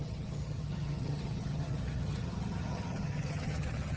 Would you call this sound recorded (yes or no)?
no